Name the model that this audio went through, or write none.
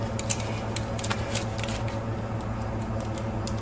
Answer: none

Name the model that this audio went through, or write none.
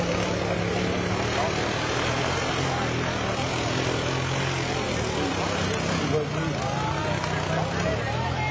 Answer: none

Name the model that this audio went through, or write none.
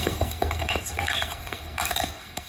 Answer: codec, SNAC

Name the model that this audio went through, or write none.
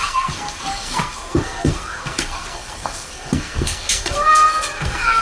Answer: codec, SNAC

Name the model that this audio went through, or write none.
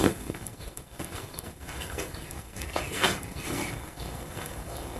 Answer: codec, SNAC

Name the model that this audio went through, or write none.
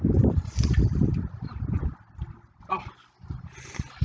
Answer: none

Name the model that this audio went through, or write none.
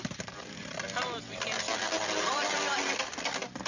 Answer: none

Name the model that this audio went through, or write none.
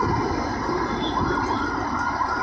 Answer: none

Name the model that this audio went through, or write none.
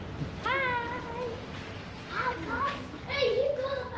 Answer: none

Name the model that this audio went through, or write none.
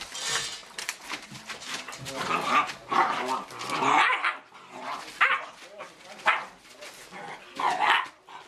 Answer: none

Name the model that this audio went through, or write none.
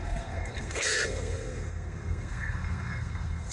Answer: codec, SNAC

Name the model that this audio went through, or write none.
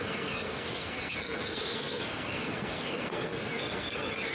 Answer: codec, SNAC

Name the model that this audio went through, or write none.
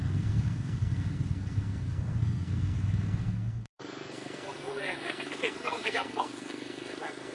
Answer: codec, SNAC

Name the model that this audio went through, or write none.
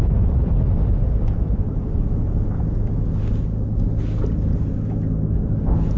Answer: none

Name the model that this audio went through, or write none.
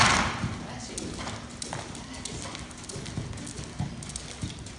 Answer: none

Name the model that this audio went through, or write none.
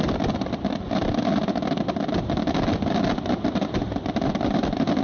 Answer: none